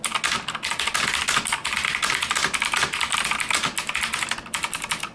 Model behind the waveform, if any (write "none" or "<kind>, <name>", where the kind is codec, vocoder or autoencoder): none